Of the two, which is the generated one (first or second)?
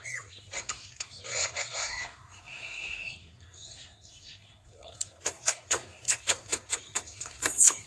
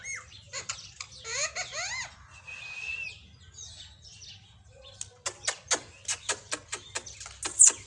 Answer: first